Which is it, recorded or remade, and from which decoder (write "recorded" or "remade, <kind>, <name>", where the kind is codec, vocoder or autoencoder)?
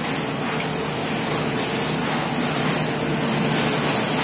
recorded